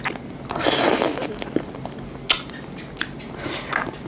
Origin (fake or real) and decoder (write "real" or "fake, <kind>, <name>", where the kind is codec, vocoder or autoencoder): real